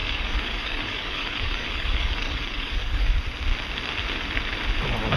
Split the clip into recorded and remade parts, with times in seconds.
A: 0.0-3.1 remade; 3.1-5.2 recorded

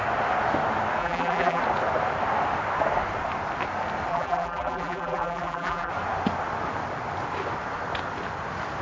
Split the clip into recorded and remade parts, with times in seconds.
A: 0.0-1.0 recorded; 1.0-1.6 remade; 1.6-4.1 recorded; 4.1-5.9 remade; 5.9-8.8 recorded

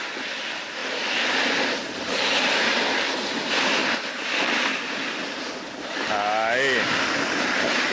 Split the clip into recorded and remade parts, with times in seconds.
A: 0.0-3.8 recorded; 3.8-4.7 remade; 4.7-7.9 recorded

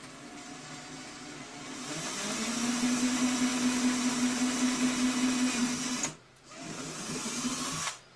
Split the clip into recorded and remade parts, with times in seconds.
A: 0.0-8.2 recorded

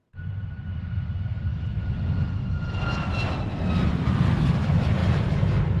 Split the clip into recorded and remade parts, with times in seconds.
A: 0.0-5.8 recorded